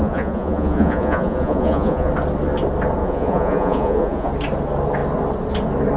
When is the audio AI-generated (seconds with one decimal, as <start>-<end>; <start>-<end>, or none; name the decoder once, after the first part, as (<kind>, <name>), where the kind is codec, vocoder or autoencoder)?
0.0-2.1 (vocoder, Vocos); 3.0-4.3